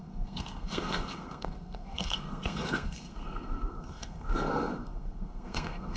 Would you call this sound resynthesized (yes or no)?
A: yes